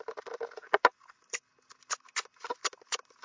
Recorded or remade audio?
recorded